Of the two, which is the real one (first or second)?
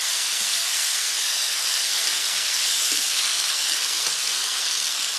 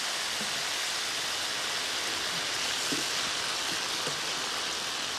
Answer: second